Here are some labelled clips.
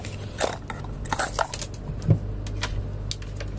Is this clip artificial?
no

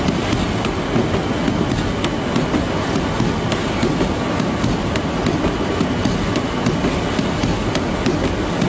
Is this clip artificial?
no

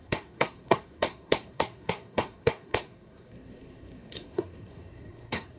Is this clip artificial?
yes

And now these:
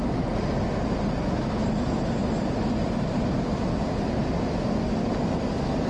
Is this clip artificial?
no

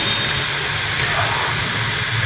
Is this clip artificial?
no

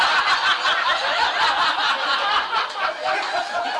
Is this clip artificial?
no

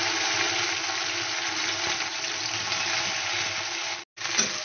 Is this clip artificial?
no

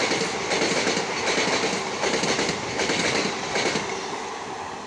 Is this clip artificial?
no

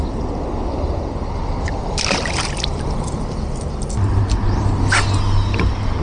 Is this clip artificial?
no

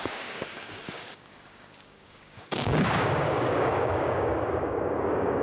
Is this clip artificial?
yes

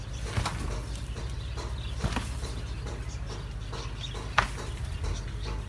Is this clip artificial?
no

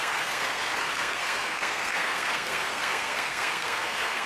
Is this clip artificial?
yes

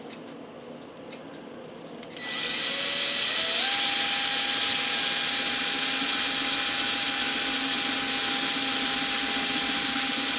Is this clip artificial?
no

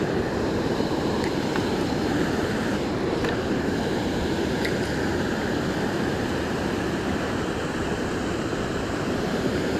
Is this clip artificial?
yes